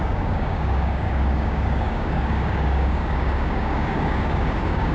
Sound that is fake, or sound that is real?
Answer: fake